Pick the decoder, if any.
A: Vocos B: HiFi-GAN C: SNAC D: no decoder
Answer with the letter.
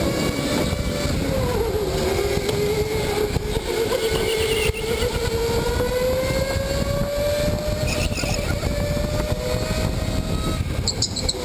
D